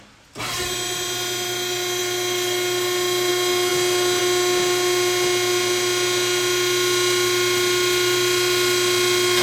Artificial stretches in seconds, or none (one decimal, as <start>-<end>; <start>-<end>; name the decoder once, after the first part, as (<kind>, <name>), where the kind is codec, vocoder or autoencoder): none